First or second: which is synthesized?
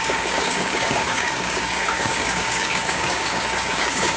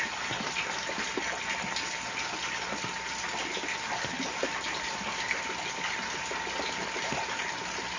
first